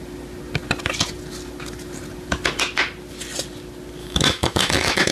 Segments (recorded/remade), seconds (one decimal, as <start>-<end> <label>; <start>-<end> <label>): 0.0-4.0 recorded; 4.0-5.1 remade